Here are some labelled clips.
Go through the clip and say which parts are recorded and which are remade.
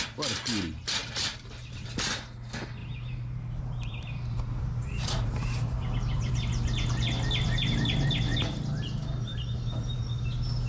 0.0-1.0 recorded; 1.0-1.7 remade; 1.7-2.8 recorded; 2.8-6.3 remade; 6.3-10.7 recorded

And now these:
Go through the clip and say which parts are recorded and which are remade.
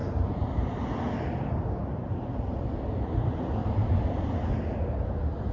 0.0-0.8 remade; 0.8-1.8 recorded; 1.8-2.9 remade; 2.9-3.6 recorded; 3.6-4.1 remade; 4.1-5.5 recorded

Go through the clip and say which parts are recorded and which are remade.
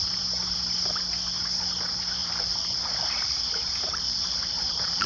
0.0-2.2 recorded; 2.2-5.1 remade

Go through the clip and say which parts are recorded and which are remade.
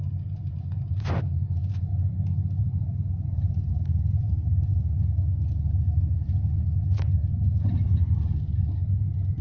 0.0-1.9 remade; 1.9-2.6 recorded; 2.6-4.5 remade; 4.5-7.5 recorded; 7.5-9.4 remade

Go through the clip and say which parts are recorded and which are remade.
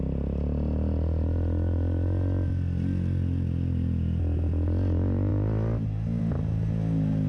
0.0-7.3 recorded